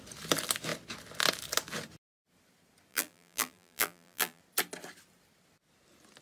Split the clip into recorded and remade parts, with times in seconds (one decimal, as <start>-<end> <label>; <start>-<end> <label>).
0.0-2.9 recorded; 2.9-4.4 remade; 4.4-6.2 recorded